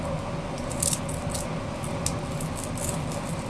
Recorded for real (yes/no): yes